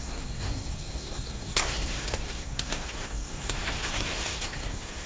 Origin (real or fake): fake